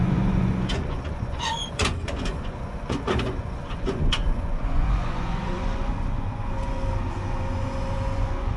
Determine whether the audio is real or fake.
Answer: fake